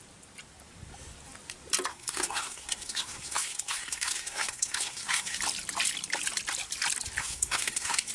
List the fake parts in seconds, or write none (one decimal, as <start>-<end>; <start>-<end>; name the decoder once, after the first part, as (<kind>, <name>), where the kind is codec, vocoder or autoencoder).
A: 1.9-5.4 (codec, SNAC); 7.2-8.1

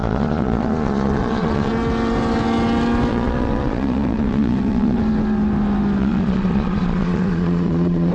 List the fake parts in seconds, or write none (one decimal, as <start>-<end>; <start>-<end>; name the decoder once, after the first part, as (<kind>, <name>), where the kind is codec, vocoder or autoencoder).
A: 0.0-1.7 (vocoder, Vocos); 3.1-5.0; 6.0-8.1

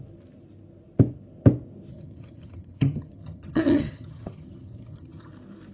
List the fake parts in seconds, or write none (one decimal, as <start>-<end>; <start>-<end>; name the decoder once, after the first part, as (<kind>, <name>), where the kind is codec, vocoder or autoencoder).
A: 1.9-5.3 (vocoder, HiFi-GAN)

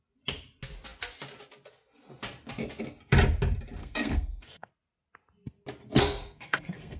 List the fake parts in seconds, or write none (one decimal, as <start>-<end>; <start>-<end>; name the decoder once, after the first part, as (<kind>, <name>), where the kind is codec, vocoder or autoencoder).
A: 3.8-4.7 (codec, SNAC); 6.2-7.0

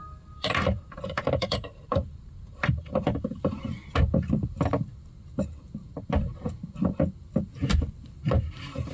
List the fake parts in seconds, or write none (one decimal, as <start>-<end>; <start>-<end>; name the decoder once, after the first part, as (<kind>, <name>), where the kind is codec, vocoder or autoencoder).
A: 0.0-3.8 (vocoder, BigVGAN v2); 8.5-8.9

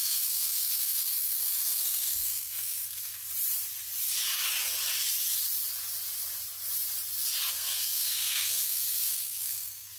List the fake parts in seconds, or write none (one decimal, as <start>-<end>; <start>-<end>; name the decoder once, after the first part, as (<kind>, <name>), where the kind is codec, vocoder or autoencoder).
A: 0.0-3.2 (codec, SNAC); 7.5-10.0

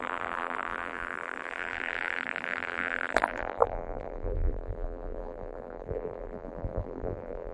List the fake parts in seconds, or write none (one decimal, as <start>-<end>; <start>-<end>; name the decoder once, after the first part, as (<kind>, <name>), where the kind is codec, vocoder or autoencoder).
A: 0.0-7.5 (vocoder, BigVGAN v2)